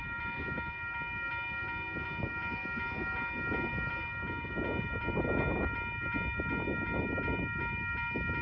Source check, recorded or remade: recorded